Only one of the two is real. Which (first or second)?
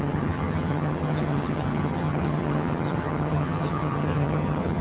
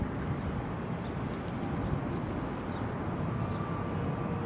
second